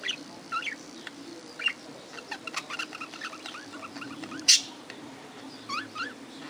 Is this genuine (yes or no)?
no